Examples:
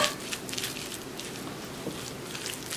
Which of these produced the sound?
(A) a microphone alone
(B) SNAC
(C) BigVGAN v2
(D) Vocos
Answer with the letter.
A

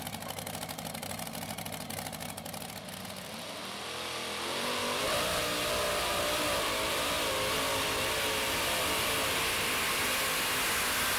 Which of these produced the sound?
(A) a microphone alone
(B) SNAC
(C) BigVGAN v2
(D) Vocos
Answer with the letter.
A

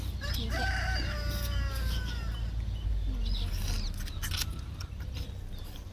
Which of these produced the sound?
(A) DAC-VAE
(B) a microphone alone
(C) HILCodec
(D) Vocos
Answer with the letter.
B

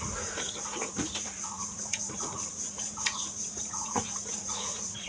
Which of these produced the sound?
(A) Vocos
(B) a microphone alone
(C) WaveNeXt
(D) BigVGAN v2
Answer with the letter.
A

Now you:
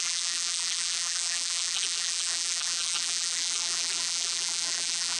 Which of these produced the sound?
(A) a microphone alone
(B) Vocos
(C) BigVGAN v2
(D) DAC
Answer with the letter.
C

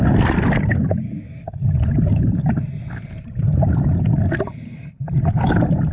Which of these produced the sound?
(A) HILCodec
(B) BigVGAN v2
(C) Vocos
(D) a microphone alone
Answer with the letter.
D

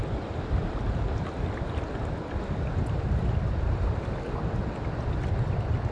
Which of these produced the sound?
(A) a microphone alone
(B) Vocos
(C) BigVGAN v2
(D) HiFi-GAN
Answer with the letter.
A